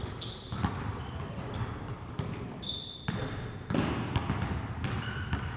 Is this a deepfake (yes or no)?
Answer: yes